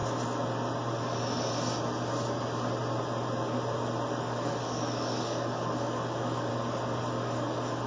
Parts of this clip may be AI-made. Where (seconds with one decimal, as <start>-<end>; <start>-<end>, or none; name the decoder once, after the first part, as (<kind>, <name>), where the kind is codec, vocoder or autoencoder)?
4.2-6.5 (codec, DAC); 7.1-7.9